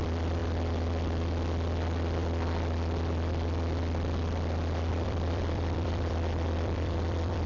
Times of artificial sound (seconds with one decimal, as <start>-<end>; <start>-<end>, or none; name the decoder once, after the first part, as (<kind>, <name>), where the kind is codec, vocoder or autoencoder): 0.0-0.4 (vocoder, BigVGAN v2); 4.9-7.5